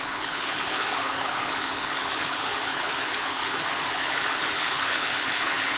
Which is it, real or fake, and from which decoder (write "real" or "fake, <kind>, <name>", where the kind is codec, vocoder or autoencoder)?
fake, codec, HILCodec